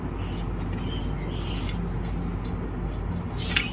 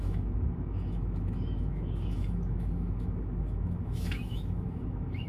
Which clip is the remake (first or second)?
second